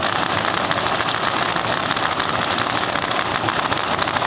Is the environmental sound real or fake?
real